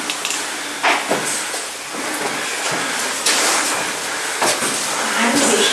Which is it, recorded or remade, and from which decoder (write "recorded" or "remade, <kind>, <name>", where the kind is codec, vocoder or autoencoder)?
recorded